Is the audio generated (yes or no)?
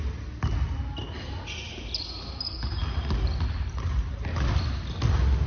no